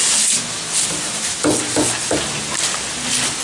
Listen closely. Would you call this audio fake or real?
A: real